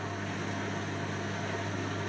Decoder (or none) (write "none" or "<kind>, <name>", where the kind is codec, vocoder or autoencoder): none